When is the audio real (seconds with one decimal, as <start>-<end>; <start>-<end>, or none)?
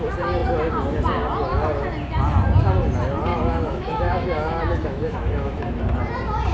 0.0-3.3; 5.8-6.5